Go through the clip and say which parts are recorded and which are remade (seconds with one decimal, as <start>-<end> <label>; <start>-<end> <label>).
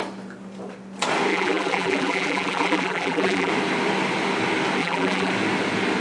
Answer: 0.0-1.3 recorded; 1.3-3.5 remade; 3.5-4.8 recorded; 4.8-5.3 remade; 5.3-6.0 recorded